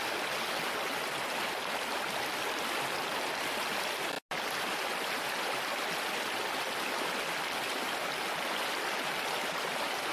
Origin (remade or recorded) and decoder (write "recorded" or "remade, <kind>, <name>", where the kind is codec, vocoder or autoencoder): recorded